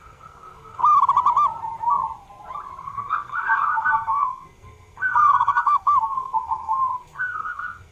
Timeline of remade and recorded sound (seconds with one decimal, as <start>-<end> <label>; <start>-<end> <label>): 0.0-0.8 remade; 0.8-2.8 recorded; 2.8-7.9 remade